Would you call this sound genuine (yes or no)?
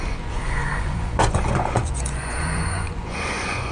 no